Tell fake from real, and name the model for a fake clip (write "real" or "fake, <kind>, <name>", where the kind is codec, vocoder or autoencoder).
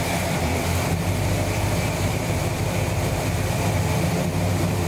fake, vocoder, BigVGAN v2